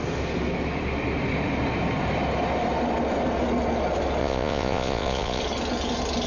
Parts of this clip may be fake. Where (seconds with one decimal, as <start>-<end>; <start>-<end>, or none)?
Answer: 4.2-5.4